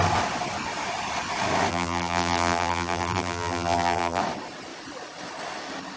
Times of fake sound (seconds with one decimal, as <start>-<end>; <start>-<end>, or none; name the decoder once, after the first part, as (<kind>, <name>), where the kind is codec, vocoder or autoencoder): 1.7-4.2 (vocoder, BigVGAN v2)